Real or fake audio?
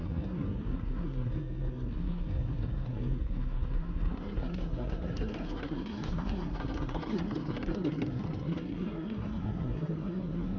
fake